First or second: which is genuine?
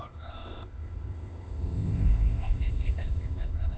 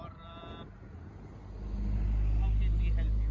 second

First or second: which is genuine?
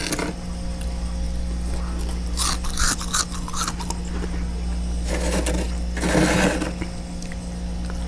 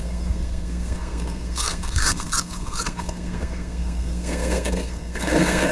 first